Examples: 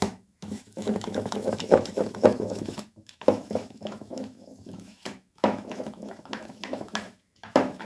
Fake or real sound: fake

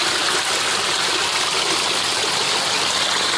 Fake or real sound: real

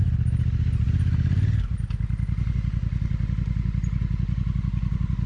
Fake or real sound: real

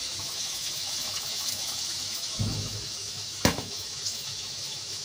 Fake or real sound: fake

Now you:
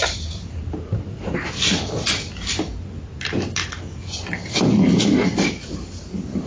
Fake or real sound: real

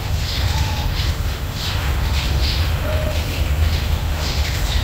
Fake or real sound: fake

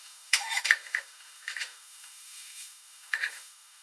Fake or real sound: fake